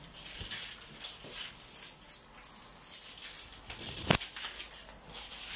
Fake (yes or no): no